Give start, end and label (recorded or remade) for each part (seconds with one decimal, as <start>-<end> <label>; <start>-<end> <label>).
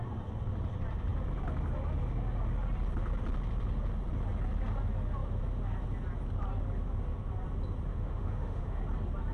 0.0-7.9 recorded; 7.9-8.8 remade; 8.8-9.3 recorded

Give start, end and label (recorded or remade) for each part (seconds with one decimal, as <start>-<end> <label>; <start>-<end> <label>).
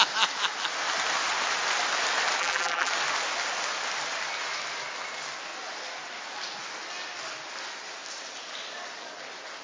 0.0-2.4 recorded; 2.4-2.9 remade; 2.9-9.6 recorded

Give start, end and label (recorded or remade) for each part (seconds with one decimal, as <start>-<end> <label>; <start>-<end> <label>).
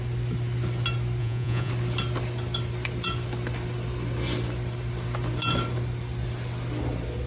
0.0-1.2 recorded; 1.2-1.7 remade; 1.7-7.3 recorded